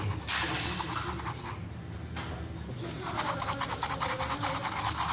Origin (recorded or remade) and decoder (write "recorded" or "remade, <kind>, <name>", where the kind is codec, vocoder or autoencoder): recorded